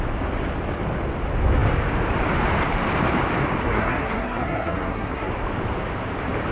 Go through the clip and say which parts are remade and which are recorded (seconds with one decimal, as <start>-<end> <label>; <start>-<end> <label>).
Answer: 0.0-3.6 recorded; 3.6-5.3 remade; 5.3-6.5 recorded